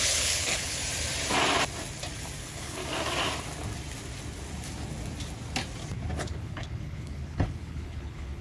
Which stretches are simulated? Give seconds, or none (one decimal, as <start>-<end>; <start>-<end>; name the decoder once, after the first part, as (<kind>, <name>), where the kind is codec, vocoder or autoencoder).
0.0-0.8 (codec, HILCodec); 2.4-2.8; 6.2-8.4

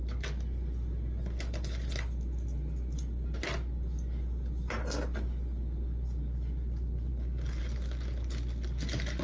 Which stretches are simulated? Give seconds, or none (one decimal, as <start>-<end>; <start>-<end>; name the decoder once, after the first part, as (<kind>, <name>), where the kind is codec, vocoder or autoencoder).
none

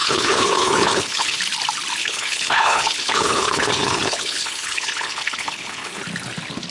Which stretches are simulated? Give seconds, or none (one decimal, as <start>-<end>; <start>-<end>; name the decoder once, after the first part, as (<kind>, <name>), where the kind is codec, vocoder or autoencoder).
0.0-1.4 (codec, HILCodec); 2.0-6.0

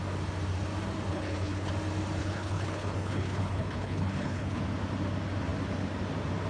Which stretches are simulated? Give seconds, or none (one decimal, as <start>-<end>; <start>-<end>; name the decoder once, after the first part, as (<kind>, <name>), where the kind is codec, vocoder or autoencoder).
1.1-1.7 (codec, HILCodec); 2.2-4.6

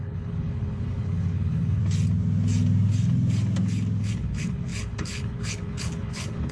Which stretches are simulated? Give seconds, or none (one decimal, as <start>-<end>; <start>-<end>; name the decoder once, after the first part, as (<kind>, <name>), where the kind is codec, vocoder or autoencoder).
0.0-1.8 (codec, HILCodec); 4.0-6.5

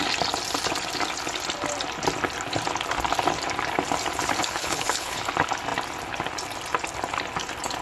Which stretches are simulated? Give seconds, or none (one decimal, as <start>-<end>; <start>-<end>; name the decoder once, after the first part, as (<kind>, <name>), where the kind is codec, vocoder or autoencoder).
4.4-5.2 (codec, HILCodec)

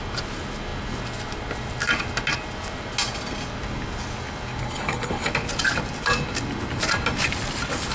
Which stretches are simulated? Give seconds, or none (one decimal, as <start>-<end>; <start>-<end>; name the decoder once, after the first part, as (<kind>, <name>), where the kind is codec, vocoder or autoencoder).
4.6-5.3 (codec, HILCodec)

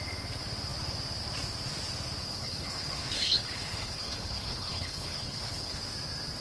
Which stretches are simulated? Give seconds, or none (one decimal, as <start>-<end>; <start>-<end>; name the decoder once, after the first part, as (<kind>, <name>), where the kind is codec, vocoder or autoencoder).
2.3-5.8 (codec, HILCodec)